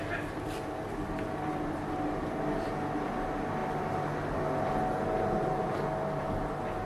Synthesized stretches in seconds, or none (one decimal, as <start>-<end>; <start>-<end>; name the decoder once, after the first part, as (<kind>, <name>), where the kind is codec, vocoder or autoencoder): none